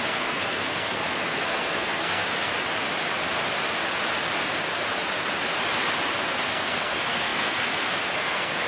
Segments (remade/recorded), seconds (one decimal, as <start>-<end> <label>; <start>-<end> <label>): 0.0-2.5 remade; 2.5-6.2 recorded; 6.2-8.7 remade